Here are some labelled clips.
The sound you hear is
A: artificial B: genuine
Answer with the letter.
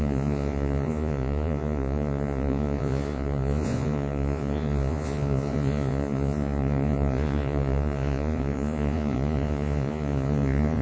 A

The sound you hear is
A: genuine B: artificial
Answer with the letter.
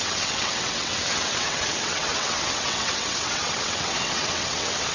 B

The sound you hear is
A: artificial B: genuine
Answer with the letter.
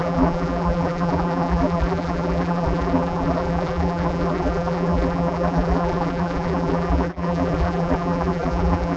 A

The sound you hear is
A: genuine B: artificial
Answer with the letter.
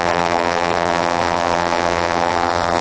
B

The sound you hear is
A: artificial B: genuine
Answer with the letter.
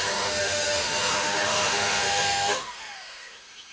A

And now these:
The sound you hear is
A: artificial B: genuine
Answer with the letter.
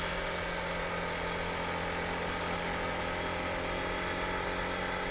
B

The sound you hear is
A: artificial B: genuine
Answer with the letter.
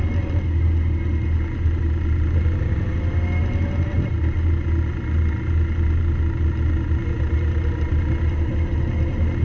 B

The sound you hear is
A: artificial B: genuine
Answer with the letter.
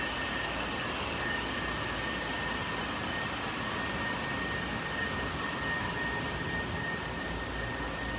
B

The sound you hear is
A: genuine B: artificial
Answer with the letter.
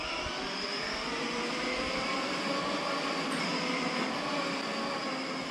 A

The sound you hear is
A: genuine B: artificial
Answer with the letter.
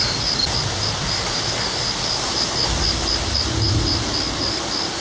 A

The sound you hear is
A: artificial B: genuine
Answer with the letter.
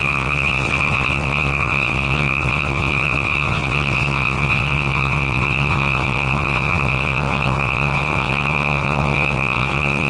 A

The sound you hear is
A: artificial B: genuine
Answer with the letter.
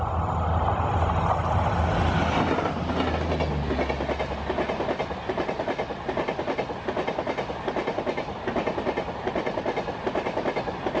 B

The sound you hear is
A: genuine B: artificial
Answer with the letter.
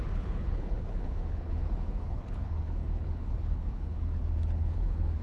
B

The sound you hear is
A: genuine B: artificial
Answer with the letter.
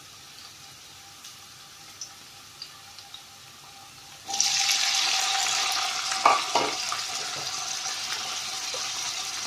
A